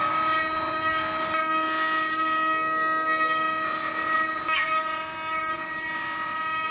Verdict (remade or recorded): recorded